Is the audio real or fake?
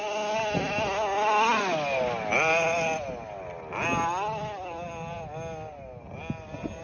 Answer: real